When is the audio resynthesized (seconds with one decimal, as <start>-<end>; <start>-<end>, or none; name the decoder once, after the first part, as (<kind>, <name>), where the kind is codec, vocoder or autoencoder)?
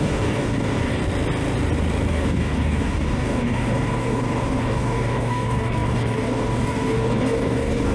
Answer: 0.0-1.0 (codec, DAC); 2.1-7.9